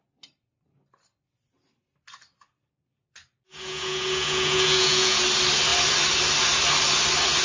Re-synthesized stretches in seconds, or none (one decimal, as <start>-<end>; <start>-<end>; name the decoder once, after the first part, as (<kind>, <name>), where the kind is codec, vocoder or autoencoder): 3.5-5.2 (vocoder, Vocos)